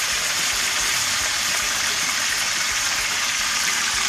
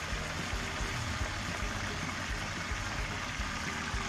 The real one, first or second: second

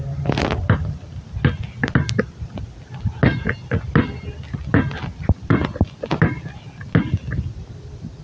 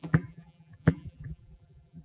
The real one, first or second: first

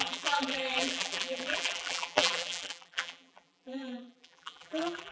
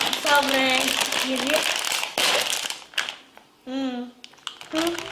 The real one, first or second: second